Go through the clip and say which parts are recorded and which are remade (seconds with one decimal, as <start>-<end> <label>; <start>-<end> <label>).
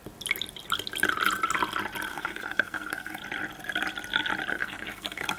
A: 0.0-2.1 recorded; 2.1-3.2 remade; 3.2-4.5 recorded; 4.5-5.4 remade